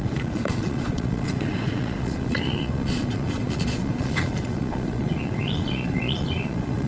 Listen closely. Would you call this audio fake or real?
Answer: fake